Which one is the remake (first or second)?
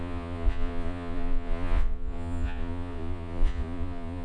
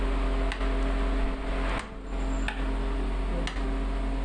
first